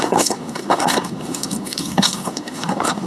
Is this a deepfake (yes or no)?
yes